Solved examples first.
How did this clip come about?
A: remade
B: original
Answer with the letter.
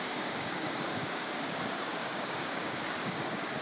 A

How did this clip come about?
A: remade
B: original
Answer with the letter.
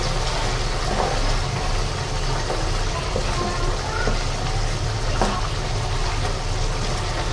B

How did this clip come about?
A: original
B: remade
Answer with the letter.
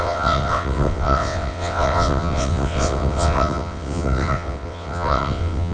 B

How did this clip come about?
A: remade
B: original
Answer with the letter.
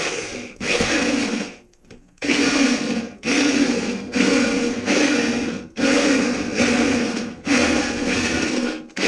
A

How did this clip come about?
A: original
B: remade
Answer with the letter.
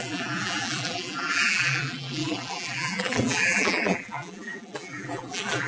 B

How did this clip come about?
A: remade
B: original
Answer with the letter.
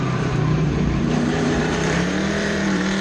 A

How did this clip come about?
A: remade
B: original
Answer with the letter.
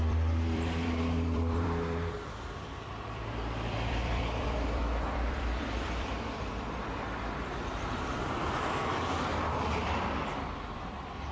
A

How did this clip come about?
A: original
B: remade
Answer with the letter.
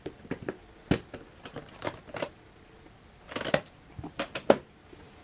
A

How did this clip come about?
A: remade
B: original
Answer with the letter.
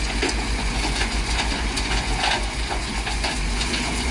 A